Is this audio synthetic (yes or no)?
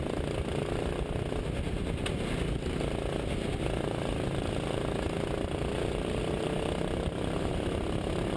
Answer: no